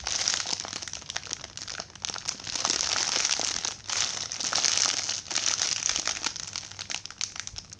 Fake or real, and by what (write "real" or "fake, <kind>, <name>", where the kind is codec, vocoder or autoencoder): real